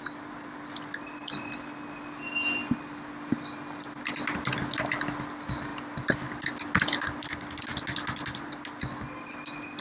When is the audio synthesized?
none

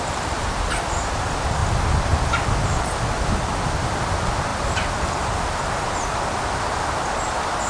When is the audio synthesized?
none

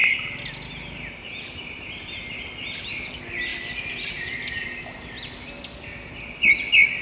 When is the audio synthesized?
none

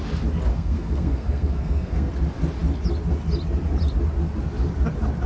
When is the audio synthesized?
0.5-2.1 (codec, SNAC)